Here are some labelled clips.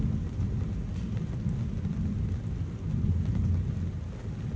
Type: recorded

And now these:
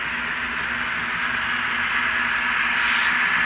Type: recorded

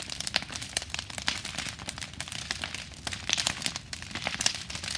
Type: recorded